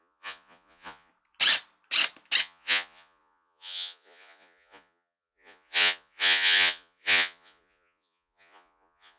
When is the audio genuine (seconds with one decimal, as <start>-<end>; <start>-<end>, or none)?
1.1-2.4

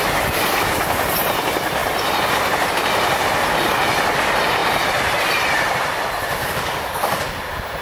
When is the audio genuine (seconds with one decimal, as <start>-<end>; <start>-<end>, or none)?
0.0-6.4; 7.2-7.8

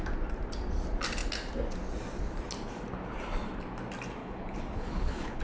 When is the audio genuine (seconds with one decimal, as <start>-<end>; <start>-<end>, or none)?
0.0-4.2

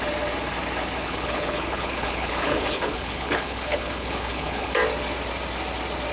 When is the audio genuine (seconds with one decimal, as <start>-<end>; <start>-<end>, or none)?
0.0-1.0; 4.7-6.1

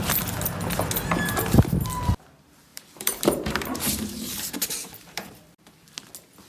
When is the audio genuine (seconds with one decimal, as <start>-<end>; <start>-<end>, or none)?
0.0-2.7; 5.9-6.5

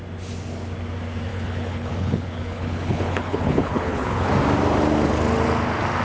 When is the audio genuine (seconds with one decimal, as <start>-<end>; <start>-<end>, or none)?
0.0-1.3; 4.3-6.0